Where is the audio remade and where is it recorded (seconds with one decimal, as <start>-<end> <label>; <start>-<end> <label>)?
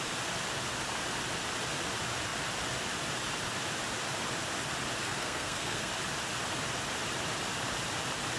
0.0-5.0 recorded; 5.0-5.9 remade; 5.9-8.4 recorded